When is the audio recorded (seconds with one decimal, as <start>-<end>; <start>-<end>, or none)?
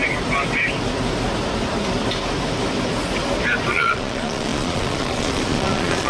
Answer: 0.0-3.7